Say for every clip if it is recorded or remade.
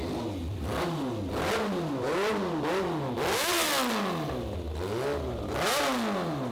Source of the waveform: recorded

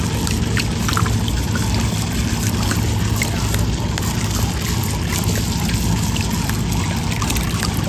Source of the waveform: recorded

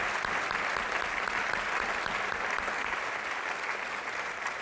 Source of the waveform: recorded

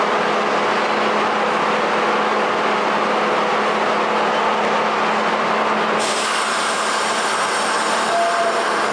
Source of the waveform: recorded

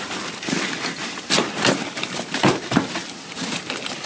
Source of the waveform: recorded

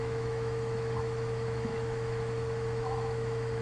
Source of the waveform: remade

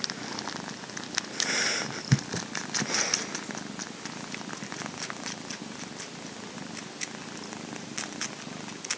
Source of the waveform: recorded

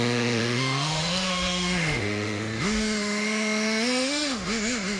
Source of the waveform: remade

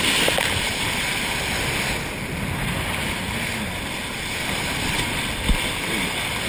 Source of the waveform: recorded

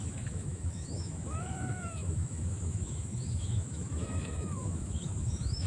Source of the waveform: remade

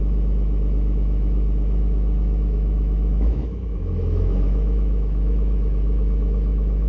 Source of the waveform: remade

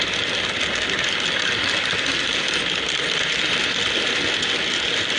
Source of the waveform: recorded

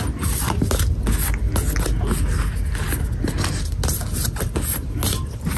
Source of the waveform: recorded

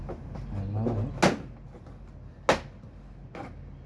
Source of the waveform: recorded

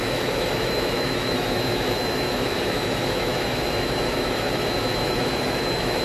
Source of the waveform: remade